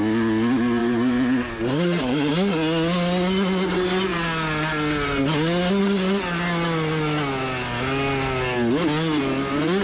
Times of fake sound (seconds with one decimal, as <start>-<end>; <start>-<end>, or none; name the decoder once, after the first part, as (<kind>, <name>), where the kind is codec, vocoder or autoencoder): 0.8-2.3 (vocoder, BigVGAN v2)